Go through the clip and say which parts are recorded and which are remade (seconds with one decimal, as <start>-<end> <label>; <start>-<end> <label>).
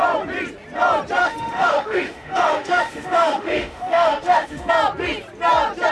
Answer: 0.0-1.2 recorded; 1.2-4.7 remade; 4.7-5.9 recorded